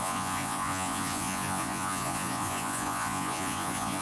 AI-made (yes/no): yes